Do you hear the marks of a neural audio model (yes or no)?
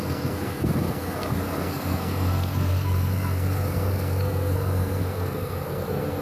yes